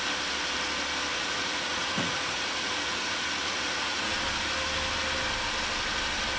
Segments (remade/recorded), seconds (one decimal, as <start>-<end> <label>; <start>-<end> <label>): 0.0-1.1 recorded; 1.1-4.2 remade; 4.2-6.4 recorded